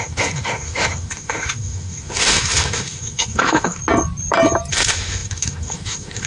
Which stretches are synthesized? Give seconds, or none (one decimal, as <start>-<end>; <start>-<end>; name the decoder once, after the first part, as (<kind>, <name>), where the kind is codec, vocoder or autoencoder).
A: 0.0-3.8 (autoencoder, DAC-VAE); 4.7-6.3